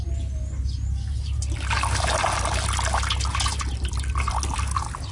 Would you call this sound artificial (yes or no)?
no